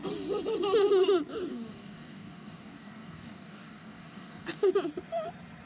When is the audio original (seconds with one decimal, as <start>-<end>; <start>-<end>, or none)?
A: 0.0-1.5; 4.7-5.7